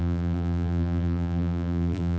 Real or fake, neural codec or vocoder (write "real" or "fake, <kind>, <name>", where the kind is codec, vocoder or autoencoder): fake, vocoder, BigVGAN v2